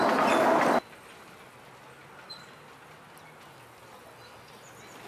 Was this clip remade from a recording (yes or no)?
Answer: no